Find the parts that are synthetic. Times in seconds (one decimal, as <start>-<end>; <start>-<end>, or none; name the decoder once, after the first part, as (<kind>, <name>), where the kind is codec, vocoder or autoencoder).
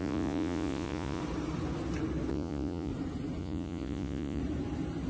0.0-1.2 (vocoder, Vocos); 2.3-2.9; 3.4-4.4